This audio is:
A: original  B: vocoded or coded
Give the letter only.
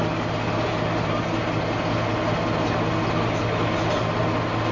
A